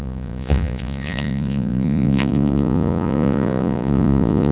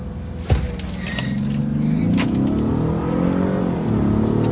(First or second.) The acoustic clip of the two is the second